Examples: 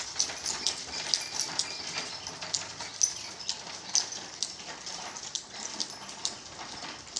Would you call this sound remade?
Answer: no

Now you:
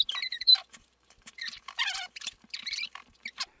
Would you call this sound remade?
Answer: yes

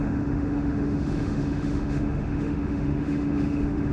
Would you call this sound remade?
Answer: yes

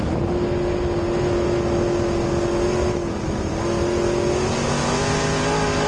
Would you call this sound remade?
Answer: no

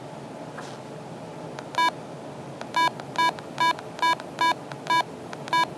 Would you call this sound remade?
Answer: no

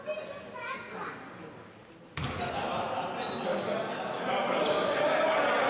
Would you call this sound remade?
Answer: no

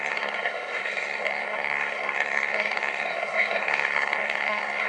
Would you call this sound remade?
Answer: yes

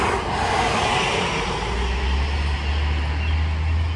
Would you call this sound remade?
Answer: no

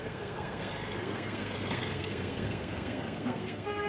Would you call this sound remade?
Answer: yes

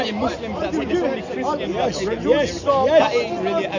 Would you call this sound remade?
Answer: no